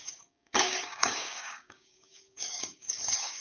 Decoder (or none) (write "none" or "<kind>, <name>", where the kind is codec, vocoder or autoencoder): codec, DAC